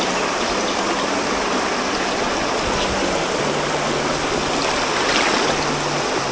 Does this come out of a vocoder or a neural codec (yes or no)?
no